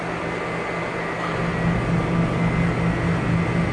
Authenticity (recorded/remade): recorded